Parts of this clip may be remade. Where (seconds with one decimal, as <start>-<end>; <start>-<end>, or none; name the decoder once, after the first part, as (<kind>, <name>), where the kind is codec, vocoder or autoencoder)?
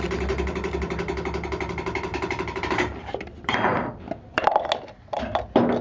2.1-4.6 (vocoder, BigVGAN v2)